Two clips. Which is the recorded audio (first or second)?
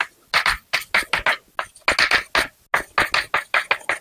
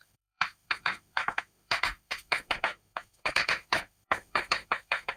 first